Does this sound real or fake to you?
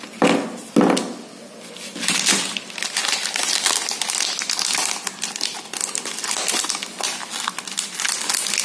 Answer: real